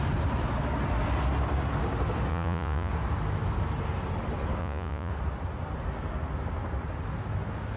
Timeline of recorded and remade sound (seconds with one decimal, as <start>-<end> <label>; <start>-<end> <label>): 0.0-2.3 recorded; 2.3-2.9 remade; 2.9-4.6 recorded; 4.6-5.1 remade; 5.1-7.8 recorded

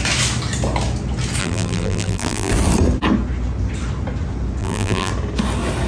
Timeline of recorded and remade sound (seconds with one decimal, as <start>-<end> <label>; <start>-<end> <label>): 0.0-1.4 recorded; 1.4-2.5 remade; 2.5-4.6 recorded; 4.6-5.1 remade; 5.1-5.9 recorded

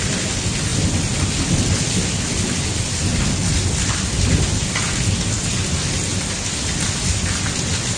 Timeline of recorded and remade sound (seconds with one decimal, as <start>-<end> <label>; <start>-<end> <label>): 0.0-0.7 recorded; 0.7-4.6 remade; 4.6-8.0 recorded